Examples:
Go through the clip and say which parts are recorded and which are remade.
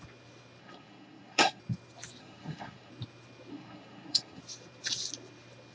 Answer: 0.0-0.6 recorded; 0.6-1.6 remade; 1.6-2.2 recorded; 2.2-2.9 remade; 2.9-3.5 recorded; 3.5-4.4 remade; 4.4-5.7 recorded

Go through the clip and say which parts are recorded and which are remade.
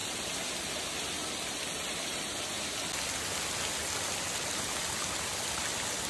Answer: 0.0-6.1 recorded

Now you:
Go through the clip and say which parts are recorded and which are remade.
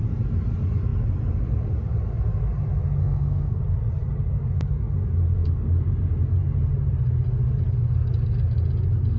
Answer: 0.0-3.0 recorded; 3.0-3.6 remade; 3.6-9.2 recorded